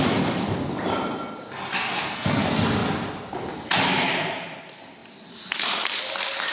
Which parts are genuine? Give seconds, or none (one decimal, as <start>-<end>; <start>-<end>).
0.0-1.7; 2.4-6.5

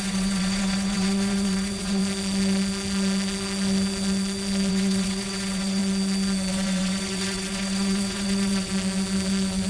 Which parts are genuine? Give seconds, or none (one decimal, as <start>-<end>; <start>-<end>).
2.0-4.7; 5.8-6.5; 8.7-9.7

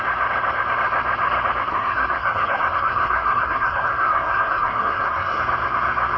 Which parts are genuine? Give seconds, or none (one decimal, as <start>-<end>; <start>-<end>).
0.0-1.7; 5.4-6.2

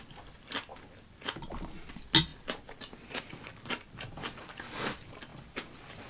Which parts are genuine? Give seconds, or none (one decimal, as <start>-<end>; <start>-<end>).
0.0-6.1

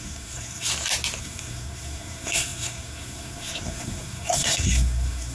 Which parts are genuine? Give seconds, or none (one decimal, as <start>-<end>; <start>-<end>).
0.7-1.2